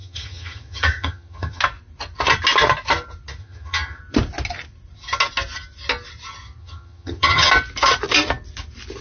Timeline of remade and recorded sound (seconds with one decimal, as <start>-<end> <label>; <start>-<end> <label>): 0.0-1.6 remade; 1.6-3.4 recorded; 3.4-4.0 remade; 4.0-6.6 recorded; 6.6-7.5 remade; 7.5-9.0 recorded